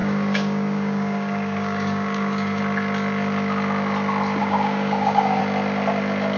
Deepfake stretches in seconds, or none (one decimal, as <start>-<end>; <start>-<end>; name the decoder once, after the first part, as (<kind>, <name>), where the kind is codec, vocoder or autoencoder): 0.0-2.6 (codec, DAC); 4.4-5.4